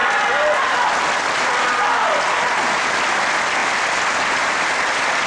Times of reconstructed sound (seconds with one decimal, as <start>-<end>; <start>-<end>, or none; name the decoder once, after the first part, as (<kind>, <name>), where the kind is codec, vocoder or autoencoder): none